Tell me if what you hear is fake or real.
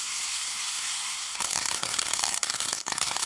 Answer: fake